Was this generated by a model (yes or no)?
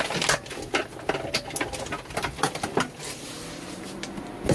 no